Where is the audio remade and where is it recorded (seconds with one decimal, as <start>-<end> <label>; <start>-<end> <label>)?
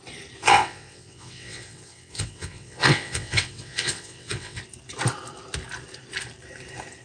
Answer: 0.0-0.4 recorded; 0.4-4.6 remade; 4.6-7.0 recorded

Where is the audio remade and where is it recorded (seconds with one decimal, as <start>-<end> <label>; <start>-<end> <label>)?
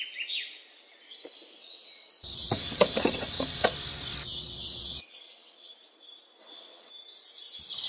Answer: 0.0-1.6 recorded; 1.6-3.7 remade; 3.7-4.3 recorded; 4.3-5.7 remade; 5.7-6.4 recorded; 6.4-6.9 remade; 6.9-7.9 recorded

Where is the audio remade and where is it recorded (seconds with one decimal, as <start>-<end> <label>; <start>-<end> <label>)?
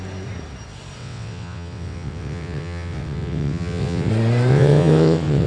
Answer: 0.0-1.0 recorded; 1.0-4.1 remade; 4.1-4.5 recorded; 4.5-5.5 remade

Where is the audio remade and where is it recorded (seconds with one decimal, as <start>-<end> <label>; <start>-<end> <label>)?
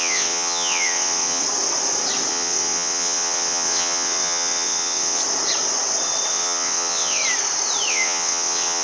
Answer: 0.0-1.4 remade; 1.4-2.3 recorded; 2.3-5.2 remade; 5.2-6.3 recorded; 6.3-7.2 remade; 7.2-7.9 recorded; 7.9-8.8 remade